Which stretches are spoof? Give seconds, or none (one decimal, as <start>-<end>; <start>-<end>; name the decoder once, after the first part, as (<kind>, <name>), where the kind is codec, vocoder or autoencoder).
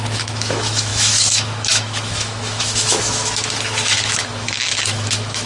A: 0.0-5.5 (autoencoder, DAC-VAE)